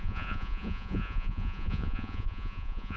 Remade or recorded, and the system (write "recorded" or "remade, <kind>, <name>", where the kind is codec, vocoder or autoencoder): remade, vocoder, Vocos